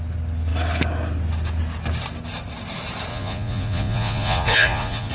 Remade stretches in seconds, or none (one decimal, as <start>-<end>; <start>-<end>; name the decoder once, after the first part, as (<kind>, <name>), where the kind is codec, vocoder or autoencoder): 3.1-5.1 (vocoder, Vocos)